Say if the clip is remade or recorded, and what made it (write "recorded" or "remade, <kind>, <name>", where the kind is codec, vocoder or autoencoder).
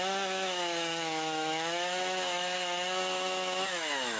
remade, autoencoder, DAC-VAE